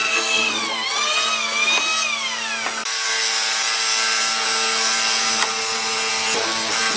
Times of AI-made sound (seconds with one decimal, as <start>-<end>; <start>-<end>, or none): 0.0-0.5